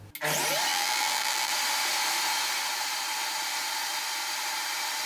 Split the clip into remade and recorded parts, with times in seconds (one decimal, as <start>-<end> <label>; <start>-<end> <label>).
0.0-0.7 recorded; 0.7-1.5 remade; 1.5-5.1 recorded